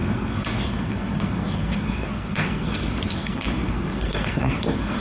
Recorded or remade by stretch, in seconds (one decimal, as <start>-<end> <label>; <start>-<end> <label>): 0.0-5.0 remade